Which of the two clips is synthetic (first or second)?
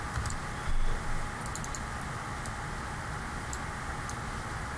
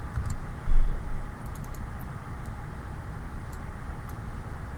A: second